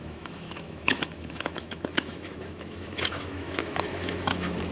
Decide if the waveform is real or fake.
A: fake